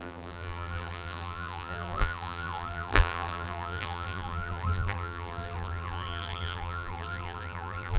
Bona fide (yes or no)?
no